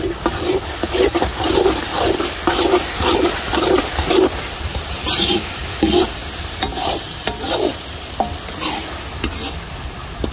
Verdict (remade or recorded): recorded